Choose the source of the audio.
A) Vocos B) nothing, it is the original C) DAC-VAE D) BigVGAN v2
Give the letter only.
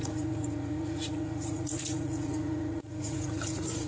A